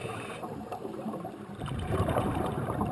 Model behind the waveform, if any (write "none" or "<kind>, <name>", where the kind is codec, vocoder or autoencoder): vocoder, BigVGAN v2